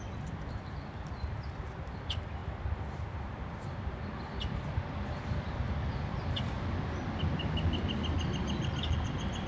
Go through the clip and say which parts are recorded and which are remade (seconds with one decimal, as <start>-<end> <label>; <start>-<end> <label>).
0.0-9.5 recorded